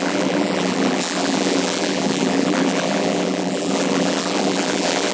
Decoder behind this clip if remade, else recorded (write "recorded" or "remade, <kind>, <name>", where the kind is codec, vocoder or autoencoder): remade, vocoder, BigVGAN v2